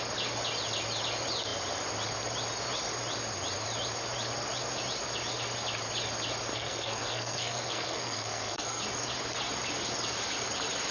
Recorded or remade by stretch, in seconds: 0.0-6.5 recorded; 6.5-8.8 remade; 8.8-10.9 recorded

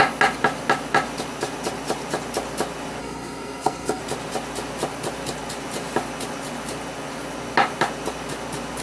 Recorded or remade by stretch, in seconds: 0.0-3.0 recorded; 3.0-4.0 remade; 4.0-8.8 recorded

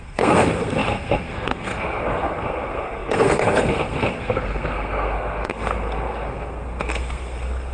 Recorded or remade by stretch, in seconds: 0.0-7.7 remade

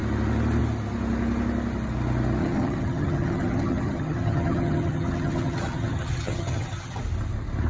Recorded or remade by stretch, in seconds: 0.0-2.4 recorded; 2.4-7.0 remade; 7.0-7.7 recorded

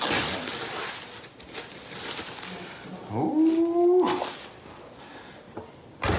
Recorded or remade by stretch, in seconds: 0.0-6.2 recorded

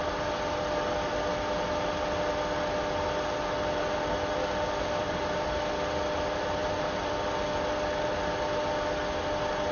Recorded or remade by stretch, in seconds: 0.0-5.0 recorded; 5.0-5.6 remade; 5.6-6.6 recorded; 6.6-7.1 remade; 7.1-9.7 recorded